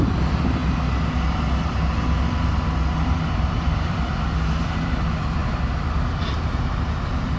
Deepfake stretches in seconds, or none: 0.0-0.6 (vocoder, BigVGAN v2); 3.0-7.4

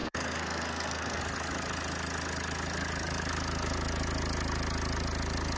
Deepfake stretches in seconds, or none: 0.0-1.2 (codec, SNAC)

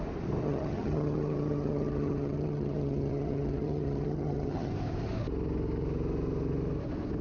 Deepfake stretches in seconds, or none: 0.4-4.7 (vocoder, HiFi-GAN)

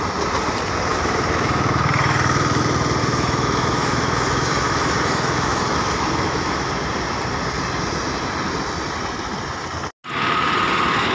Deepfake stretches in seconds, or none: 0.9-2.6 (autoencoder, DAC-VAE); 3.0-6.7

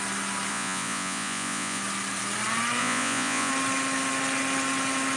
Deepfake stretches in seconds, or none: 0.5-1.8 (vocoder, Vocos); 2.8-3.5

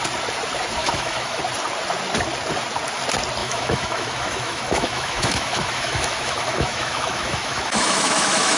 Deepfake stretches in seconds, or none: 0.8-1.4 (autoencoder, DAC-VAE); 3.4-8.6